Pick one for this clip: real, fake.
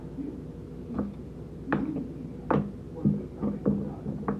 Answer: real